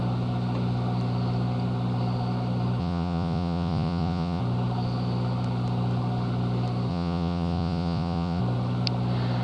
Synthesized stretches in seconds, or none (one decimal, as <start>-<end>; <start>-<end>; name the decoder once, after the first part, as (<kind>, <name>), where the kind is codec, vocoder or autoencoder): 2.8-4.4 (vocoder, Vocos); 6.9-8.4